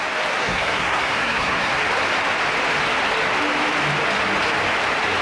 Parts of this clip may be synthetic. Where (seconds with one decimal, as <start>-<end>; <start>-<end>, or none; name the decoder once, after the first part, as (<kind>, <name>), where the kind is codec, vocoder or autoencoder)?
0.4-1.7 (codec, SNAC)